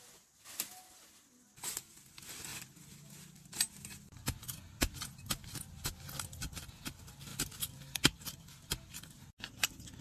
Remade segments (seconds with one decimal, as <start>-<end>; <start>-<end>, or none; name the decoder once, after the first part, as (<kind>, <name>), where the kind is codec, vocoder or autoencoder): none